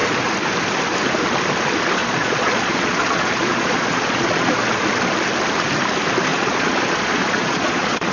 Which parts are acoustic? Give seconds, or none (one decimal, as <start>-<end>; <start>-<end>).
0.0-2.0; 4.6-6.3